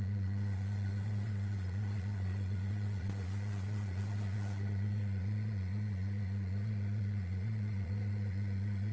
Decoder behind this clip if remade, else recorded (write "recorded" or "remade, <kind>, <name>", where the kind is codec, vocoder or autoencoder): remade, vocoder, Vocos